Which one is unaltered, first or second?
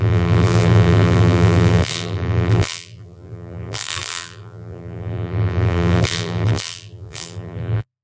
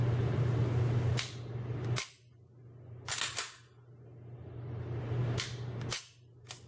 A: second